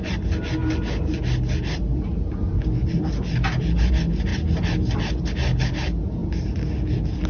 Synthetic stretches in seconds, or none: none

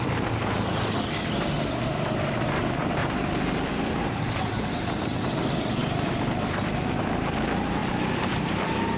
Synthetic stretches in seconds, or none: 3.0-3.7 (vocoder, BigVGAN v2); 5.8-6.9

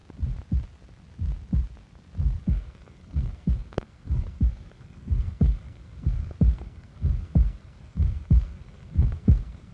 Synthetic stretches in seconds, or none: 2.4-9.7 (codec, SNAC)

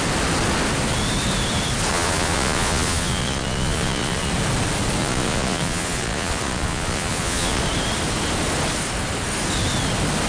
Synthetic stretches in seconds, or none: 1.9-4.3 (vocoder, Vocos); 5.0-7.6